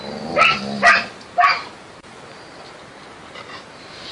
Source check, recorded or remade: recorded